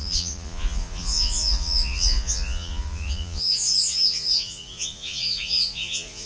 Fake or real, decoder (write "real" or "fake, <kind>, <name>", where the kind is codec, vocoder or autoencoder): fake, vocoder, Vocos